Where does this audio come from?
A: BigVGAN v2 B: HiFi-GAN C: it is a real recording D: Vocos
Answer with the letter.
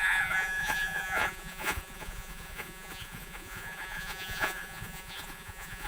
D